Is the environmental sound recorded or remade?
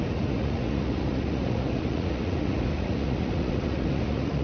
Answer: remade